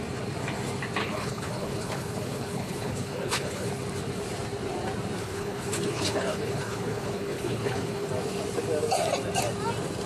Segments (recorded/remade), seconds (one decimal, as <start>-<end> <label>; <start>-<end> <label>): 0.0-1.0 recorded; 1.0-3.7 remade; 3.7-5.2 recorded; 5.2-8.1 remade; 8.1-10.1 recorded